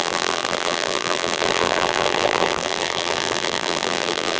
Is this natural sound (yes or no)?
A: no